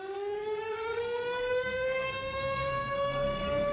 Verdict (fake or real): fake